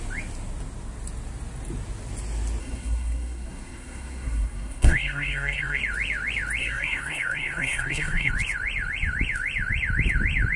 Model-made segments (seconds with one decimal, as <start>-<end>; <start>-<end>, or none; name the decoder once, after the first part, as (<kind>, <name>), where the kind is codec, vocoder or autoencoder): 2.6-5.8 (codec, SNAC); 6.6-8.3